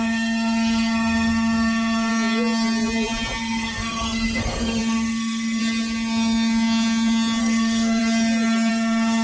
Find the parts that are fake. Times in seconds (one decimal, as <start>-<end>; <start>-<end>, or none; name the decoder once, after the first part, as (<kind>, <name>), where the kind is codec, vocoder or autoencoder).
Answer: 0.0-2.1 (codec, SNAC); 3.4-5.6; 7.4-8.0; 8.7-9.2